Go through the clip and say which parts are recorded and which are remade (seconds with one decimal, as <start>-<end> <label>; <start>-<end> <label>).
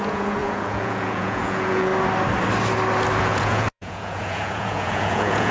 0.0-1.9 remade; 1.9-3.2 recorded; 3.2-5.5 remade